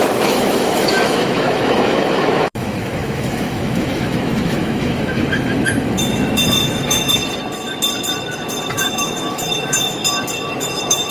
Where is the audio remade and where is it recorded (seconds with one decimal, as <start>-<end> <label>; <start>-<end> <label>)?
0.0-7.2 remade; 7.2-8.7 recorded; 8.7-10.0 remade; 10.0-10.6 recorded; 10.6-11.1 remade